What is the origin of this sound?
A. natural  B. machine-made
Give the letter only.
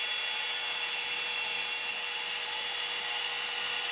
A